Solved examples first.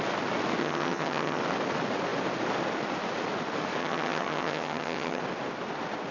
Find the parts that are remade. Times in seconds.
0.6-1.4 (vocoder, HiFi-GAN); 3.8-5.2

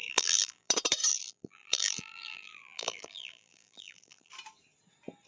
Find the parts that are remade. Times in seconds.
0.0-0.7 (vocoder, BigVGAN v2); 1.1-4.3

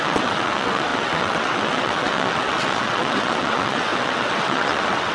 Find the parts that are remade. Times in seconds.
0.0-5.1 (vocoder, WaveNeXt)

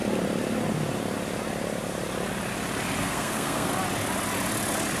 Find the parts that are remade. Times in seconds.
3.0-3.7 (codec, SNAC)

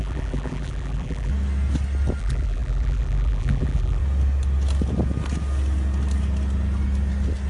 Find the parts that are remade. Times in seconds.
0.0-1.3 (vocoder, BigVGAN v2); 2.2-4.0

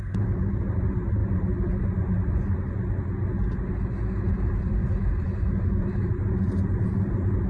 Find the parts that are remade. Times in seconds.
4.8-6.2 (autoencoder, DAC-VAE)

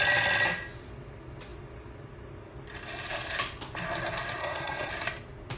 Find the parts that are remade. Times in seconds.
4.4-4.9 (codec, SNAC)

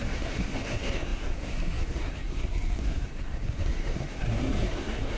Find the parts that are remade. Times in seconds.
0.0-5.2 (codec, SNAC)